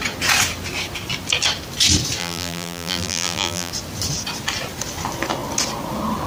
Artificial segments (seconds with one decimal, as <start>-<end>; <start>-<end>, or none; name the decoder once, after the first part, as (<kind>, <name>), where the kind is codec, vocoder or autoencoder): 2.2-3.7 (vocoder, BigVGAN v2)